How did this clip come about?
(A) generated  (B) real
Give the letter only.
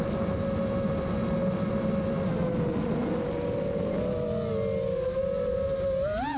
B